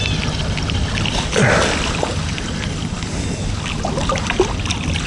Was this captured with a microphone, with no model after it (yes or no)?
yes